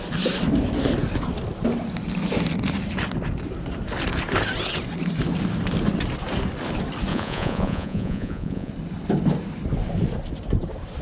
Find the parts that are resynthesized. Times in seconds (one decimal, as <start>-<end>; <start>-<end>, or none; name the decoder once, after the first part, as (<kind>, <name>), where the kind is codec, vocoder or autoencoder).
7.1-8.7 (vocoder, Vocos)